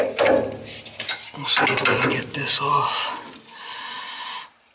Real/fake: real